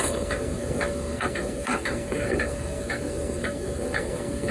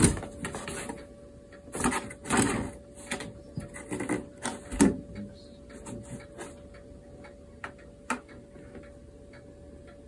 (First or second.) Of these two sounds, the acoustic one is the second